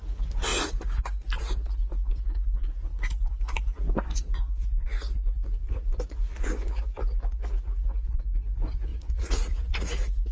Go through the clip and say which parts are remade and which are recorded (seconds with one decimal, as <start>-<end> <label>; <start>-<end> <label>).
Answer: 0.0-8.9 recorded; 8.9-9.9 remade; 9.9-10.3 recorded